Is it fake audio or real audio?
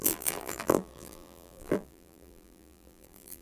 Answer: fake